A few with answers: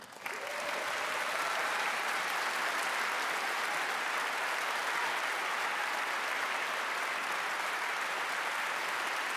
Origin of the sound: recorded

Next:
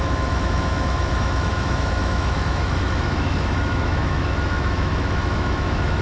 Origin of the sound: remade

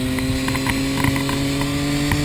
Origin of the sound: recorded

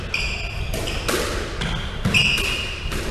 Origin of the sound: recorded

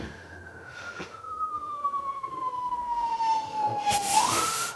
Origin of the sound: remade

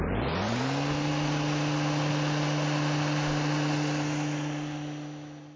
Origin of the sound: recorded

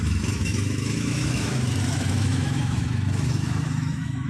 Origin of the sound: remade